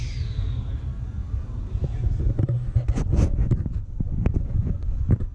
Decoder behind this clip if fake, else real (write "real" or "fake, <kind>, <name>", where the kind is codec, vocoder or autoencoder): real